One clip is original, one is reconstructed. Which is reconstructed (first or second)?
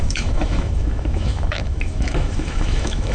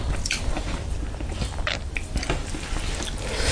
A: first